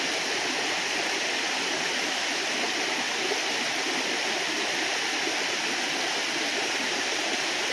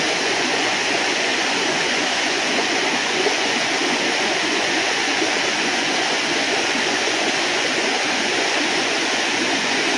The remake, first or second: second